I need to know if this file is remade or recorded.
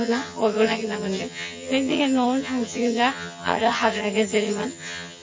remade